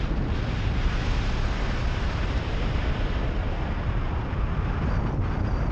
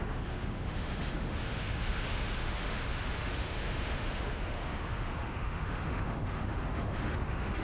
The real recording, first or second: first